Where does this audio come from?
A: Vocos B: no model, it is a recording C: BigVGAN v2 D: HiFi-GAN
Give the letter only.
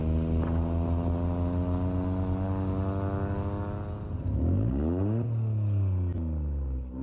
B